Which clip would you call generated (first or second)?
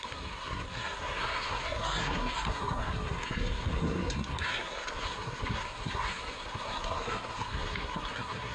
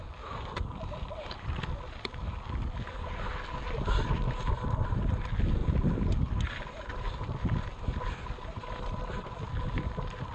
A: first